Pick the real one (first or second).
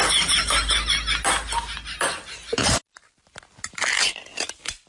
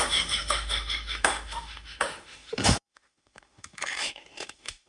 first